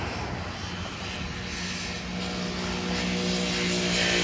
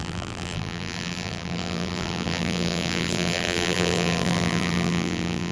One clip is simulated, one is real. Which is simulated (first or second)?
second